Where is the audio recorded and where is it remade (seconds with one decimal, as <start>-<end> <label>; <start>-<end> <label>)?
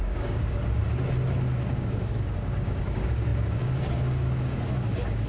0.0-0.8 remade; 0.8-1.7 recorded; 1.7-5.3 remade